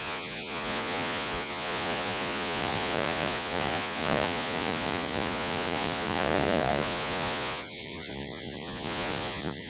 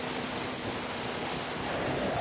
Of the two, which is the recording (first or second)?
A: second